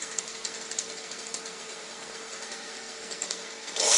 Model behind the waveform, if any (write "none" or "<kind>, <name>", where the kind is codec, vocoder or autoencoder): codec, SNAC